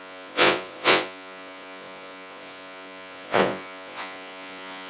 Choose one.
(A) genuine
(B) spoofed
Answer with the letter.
B